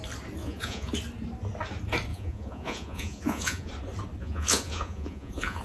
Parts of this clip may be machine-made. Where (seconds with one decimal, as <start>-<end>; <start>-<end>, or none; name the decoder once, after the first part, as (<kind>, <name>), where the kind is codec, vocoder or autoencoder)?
0.4-0.9 (vocoder, Vocos); 2.1-3.7; 4.2-5.6